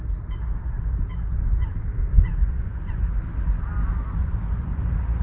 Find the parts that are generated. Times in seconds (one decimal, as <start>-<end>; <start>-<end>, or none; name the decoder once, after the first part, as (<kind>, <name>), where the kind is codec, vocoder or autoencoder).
2.4-3.0 (vocoder, Vocos); 4.2-4.8